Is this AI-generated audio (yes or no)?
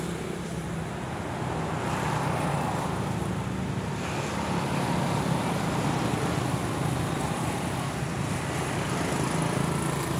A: no